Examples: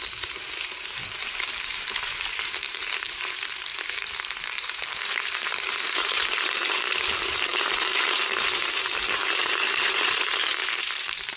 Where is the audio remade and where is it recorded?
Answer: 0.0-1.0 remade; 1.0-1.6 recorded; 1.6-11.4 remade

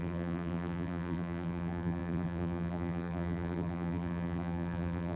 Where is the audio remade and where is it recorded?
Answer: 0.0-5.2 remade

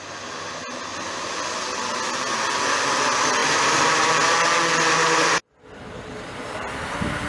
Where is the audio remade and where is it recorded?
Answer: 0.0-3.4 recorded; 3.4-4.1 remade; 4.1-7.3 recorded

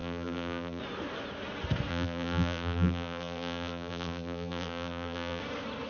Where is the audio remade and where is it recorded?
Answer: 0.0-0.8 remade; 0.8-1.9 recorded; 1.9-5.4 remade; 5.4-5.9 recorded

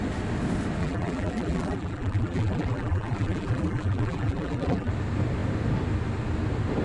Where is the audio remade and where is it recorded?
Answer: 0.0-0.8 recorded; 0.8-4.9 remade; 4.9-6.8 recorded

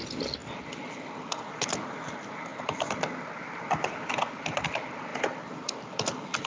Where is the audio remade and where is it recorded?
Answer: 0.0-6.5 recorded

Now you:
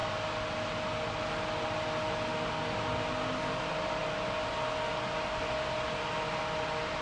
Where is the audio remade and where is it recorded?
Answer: 0.0-7.0 recorded

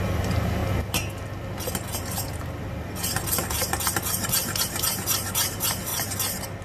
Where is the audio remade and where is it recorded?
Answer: 0.0-0.6 remade; 0.6-4.6 recorded; 4.6-5.9 remade; 5.9-6.6 recorded